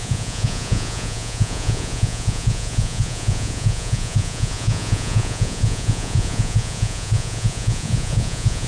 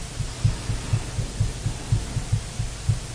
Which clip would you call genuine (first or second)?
second